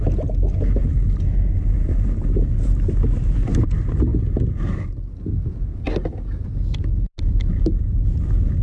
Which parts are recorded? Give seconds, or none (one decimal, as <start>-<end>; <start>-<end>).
0.0-8.6